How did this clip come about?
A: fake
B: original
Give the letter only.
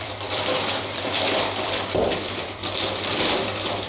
A